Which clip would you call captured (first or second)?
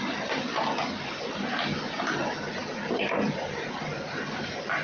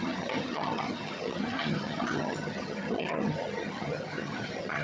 first